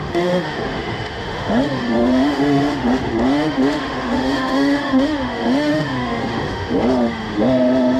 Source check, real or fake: fake